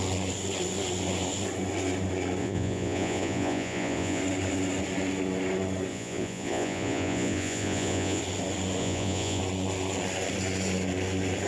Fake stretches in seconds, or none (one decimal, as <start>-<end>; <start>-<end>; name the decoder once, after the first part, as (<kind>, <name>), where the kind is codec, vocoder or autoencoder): 2.4-4.2 (vocoder, Vocos); 5.9-8.2; 8.8-9.4